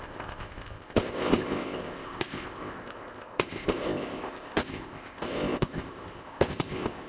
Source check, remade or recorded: remade